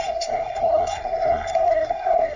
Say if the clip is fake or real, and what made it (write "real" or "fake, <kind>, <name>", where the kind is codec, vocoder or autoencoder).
fake, codec, SNAC